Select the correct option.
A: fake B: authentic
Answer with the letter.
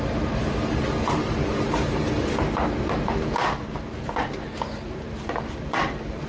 A